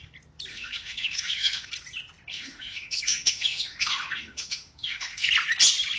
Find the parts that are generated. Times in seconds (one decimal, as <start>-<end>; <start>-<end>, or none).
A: 0.5-1.7; 2.3-5.3

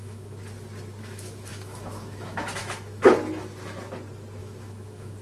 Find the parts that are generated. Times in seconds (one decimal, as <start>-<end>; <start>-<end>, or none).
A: 0.0-0.4; 1.0-3.1; 4.4-5.2

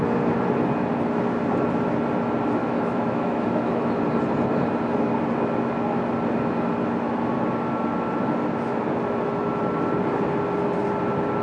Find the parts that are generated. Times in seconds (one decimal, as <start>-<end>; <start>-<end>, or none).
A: 2.6-3.9

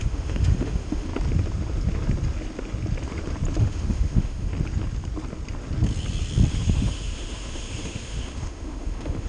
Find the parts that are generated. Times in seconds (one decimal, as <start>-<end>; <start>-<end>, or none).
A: 0.0-1.1; 3.6-4.5; 6.5-9.3